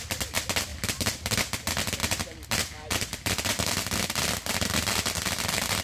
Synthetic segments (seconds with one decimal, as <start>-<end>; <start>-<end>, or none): 0.7-1.4; 2.0-5.8